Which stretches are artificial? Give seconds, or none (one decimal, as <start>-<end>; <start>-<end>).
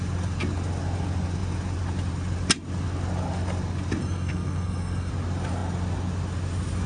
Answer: 4.0-5.1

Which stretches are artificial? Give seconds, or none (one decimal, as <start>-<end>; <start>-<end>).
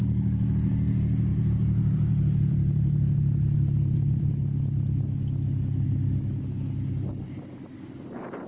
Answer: 1.3-4.3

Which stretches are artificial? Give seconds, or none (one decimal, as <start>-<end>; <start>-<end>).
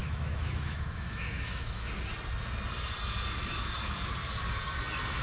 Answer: 0.0-1.9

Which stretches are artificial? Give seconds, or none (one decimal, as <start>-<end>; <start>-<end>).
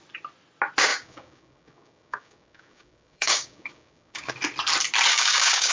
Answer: 0.9-4.3; 5.1-5.7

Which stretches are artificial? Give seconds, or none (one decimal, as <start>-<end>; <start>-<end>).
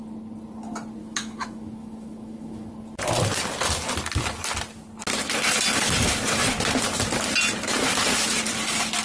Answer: 1.0-2.7